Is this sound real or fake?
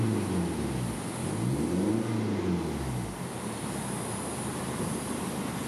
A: real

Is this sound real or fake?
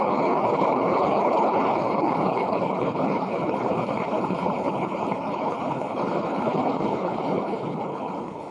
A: fake